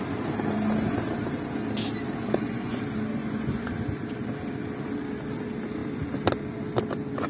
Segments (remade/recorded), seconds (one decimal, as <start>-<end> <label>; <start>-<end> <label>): 0.0-2.2 recorded; 2.2-2.8 remade; 2.8-3.2 recorded; 3.2-3.7 remade; 3.7-7.3 recorded